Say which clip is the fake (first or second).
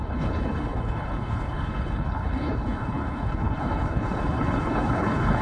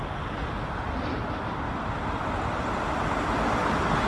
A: first